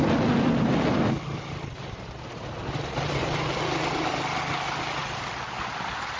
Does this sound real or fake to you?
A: real